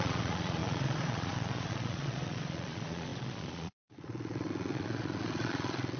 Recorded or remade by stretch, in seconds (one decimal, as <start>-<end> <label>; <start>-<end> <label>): 0.0-6.0 remade